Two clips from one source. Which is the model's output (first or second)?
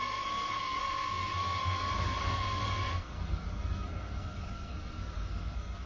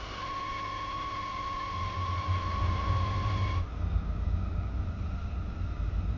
first